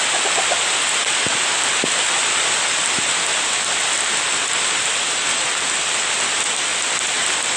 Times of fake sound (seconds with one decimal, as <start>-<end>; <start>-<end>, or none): none